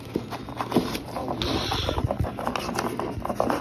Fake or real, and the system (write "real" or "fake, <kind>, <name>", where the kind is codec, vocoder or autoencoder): real